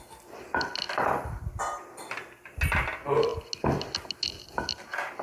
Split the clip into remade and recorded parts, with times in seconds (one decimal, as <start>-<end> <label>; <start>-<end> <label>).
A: 0.0-5.2 recorded